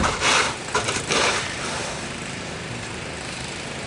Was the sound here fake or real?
fake